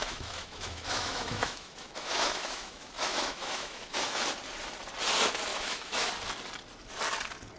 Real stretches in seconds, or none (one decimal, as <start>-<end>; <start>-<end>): 4.2-5.5; 6.1-7.6